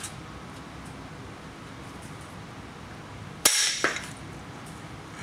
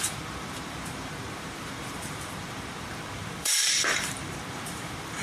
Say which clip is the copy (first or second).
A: second